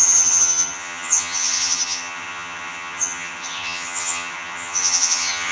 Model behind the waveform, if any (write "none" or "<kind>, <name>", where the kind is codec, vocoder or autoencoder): vocoder, HiFi-GAN